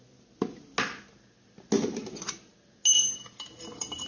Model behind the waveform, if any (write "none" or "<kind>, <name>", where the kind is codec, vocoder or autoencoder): none